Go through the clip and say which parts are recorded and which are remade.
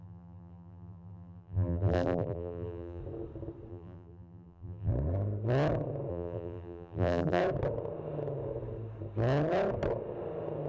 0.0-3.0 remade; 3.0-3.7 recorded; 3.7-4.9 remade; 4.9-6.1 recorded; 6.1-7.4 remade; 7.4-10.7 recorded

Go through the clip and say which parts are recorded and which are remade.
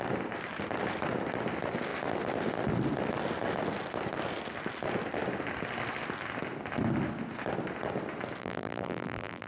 0.0-8.4 recorded; 8.4-9.5 remade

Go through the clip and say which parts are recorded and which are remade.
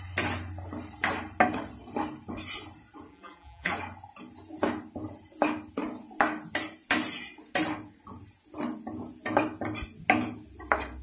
0.0-3.1 recorded; 3.1-3.7 remade; 3.7-11.0 recorded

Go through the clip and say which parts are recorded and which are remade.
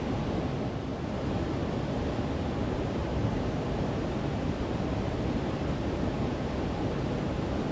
0.0-3.0 recorded; 3.0-5.7 remade; 5.7-7.7 recorded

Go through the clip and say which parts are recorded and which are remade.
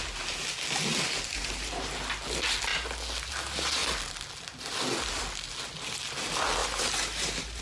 0.0-0.9 recorded; 0.9-2.0 remade; 2.0-6.6 recorded; 6.6-7.6 remade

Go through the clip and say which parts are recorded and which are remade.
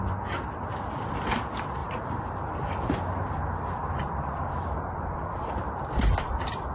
0.0-1.8 recorded; 1.8-5.8 remade; 5.8-6.7 recorded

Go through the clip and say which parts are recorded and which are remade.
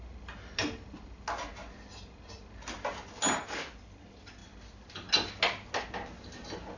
0.0-6.8 recorded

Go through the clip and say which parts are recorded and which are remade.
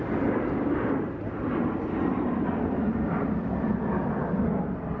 0.0-3.0 remade; 3.0-4.2 recorded; 4.2-5.0 remade